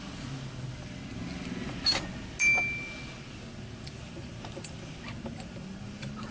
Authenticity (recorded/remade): recorded